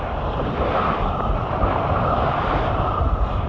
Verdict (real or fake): real